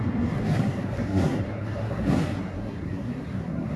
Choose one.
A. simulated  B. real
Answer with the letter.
A